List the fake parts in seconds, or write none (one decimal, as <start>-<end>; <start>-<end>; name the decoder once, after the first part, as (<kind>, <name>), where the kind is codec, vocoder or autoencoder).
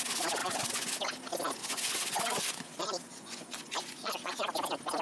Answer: 0.4-1.0 (vocoder, Vocos); 1.6-4.4